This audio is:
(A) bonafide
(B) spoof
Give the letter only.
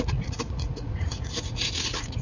B